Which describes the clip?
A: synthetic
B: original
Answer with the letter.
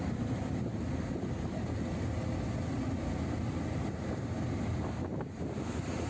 B